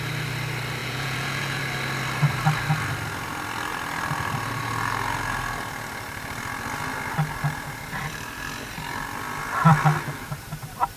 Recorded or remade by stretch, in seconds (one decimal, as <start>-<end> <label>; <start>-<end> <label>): 0.0-0.8 recorded; 0.8-1.6 remade; 1.6-11.0 recorded